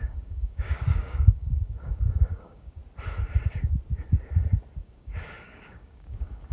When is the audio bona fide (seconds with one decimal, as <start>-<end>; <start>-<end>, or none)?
2.8-4.8